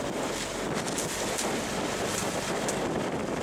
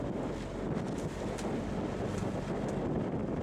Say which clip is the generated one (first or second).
first